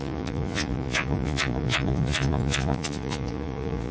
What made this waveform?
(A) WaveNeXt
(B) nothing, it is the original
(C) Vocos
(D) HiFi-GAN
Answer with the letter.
C